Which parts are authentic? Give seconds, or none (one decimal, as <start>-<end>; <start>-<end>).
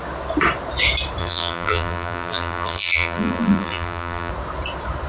0.0-1.2; 4.3-5.1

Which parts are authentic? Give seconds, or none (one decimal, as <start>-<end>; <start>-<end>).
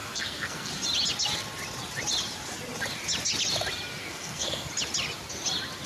0.7-4.0; 4.7-5.9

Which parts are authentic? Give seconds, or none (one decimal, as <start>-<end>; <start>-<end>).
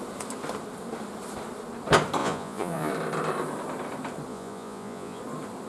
0.0-2.2; 2.9-4.3; 5.2-5.7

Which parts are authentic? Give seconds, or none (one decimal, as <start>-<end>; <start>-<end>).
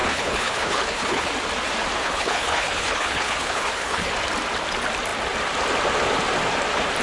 1.3-2.0; 4.1-7.0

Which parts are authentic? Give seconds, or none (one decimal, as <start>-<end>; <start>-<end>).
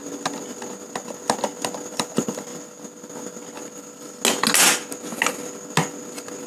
0.0-1.9; 2.5-6.5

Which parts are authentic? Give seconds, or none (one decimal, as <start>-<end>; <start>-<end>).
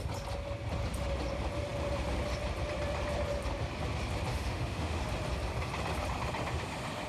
0.0-4.3; 5.0-7.1